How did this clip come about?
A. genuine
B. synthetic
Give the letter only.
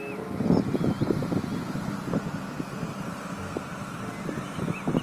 A